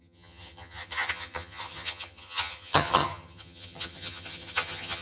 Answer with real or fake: fake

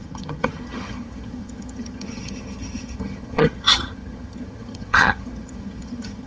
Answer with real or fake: fake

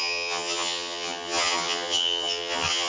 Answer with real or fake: fake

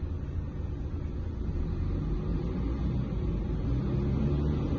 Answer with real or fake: real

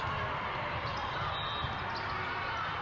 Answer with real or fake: real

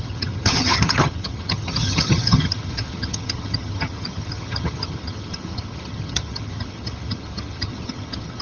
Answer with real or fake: fake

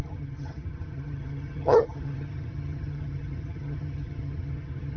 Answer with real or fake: fake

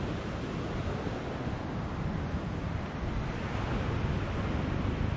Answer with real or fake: real